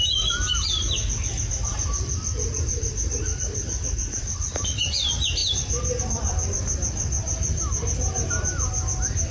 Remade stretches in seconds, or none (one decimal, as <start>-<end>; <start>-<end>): 0.0-5.4; 6.0-9.3